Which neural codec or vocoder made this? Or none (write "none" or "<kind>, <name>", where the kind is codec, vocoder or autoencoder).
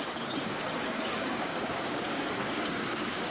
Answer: codec, DAC